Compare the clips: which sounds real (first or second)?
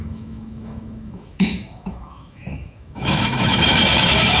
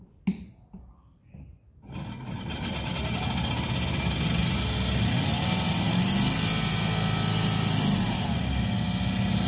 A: second